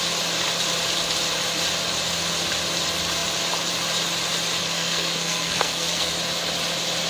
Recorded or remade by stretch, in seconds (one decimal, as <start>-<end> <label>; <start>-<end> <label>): 0.0-4.6 recorded; 4.6-6.1 remade; 6.1-7.1 recorded